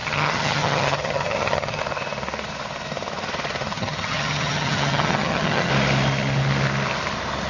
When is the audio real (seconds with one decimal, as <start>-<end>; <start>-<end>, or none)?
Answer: 1.8-3.6; 5.7-7.5